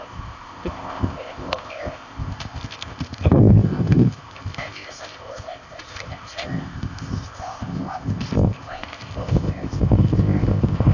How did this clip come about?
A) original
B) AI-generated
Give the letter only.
B